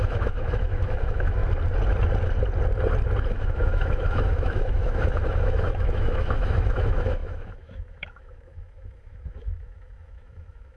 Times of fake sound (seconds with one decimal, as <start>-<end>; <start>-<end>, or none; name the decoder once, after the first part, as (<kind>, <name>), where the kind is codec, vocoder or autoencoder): 0.0-1.4 (autoencoder, DAC-VAE); 3.3-10.8